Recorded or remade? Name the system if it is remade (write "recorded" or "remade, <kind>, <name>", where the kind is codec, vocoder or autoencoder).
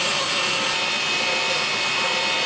recorded